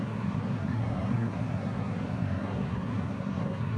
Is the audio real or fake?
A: fake